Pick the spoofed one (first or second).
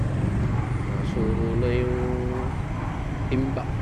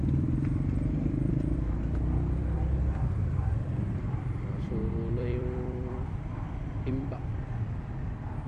second